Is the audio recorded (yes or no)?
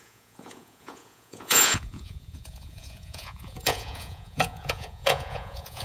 no